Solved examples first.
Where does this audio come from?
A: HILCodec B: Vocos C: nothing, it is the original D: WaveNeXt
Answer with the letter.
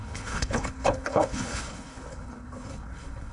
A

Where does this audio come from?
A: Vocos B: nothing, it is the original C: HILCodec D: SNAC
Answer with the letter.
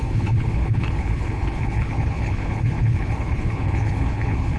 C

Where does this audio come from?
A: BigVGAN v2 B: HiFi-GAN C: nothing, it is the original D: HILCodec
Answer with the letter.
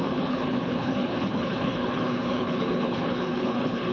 D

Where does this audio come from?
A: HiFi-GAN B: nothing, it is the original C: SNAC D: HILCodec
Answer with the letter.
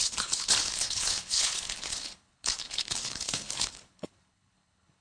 D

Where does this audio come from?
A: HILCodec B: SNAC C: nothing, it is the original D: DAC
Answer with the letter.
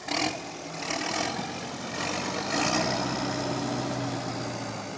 C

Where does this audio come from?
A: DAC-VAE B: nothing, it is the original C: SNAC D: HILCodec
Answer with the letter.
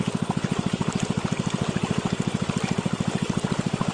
B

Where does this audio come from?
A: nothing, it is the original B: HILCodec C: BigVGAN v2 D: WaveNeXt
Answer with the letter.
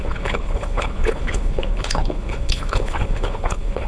B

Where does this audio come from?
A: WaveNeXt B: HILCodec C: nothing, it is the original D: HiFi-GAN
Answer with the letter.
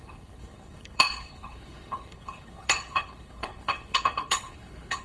B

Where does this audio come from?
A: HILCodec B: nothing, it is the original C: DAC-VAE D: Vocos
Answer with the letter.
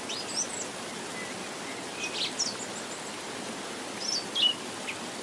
B